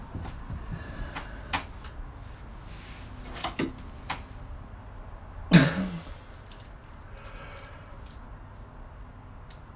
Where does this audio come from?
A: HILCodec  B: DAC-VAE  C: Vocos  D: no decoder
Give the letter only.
D